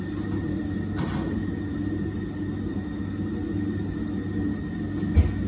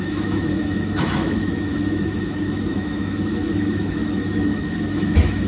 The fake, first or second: second